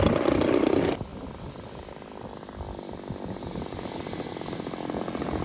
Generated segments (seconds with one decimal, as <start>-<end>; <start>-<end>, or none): none